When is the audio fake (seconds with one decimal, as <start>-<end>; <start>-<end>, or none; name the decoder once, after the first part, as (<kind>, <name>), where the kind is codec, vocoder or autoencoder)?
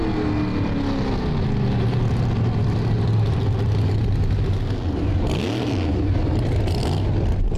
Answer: 2.6-4.1 (vocoder, BigVGAN v2)